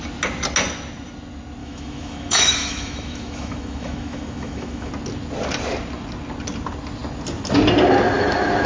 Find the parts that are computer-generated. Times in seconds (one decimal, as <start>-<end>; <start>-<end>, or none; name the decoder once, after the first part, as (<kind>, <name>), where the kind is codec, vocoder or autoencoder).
1.6-4.9 (autoencoder, DAC-VAE)